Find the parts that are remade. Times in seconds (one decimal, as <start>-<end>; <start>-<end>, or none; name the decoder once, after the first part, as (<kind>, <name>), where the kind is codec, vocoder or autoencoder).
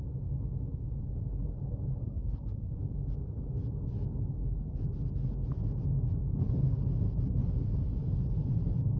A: 2.0-2.7 (codec, SNAC)